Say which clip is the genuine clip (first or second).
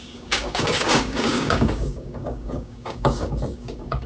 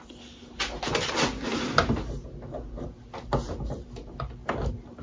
second